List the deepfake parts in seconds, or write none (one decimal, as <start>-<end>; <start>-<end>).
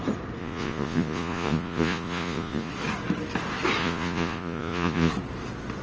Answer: 0.4-2.7; 3.8-5.1